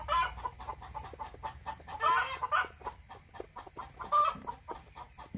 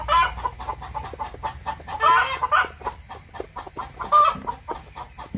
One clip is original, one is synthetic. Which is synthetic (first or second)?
first